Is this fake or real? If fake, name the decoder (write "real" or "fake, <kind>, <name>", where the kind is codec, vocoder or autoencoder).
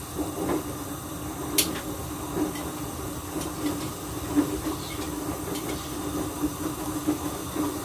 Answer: real